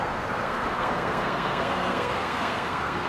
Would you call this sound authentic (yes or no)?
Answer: no